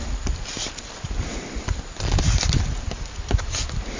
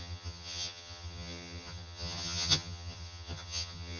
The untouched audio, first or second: first